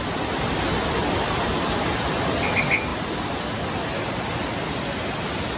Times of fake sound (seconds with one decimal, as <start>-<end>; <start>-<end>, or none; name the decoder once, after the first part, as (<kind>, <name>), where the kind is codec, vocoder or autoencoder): none